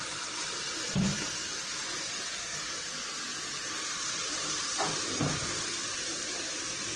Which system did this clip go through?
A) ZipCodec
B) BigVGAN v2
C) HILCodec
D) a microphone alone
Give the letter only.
B